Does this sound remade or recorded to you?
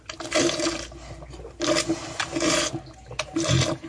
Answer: recorded